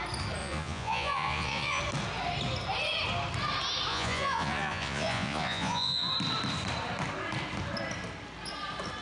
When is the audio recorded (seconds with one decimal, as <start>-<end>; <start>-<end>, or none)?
0.0-0.4; 1.8-3.9; 6.1-9.0